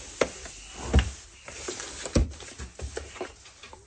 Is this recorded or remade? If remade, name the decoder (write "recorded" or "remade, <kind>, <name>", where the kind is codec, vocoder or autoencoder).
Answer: recorded